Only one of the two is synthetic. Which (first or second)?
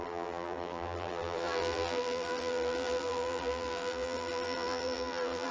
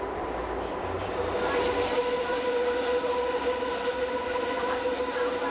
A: first